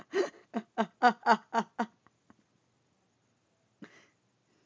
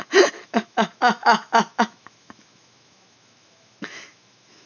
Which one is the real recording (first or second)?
first